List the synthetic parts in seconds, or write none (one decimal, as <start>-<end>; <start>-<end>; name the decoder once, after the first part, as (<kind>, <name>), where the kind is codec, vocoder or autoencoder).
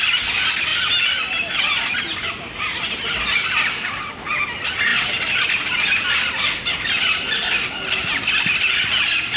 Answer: none